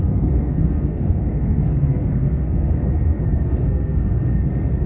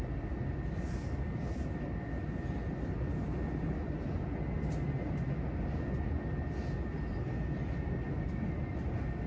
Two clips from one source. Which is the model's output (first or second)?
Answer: first